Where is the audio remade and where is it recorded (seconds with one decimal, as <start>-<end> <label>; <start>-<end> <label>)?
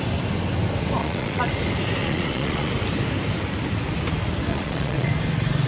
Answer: 0.0-1.0 recorded; 1.0-1.5 remade; 1.5-2.0 recorded; 2.0-2.7 remade; 2.7-4.5 recorded; 4.5-5.1 remade; 5.1-5.7 recorded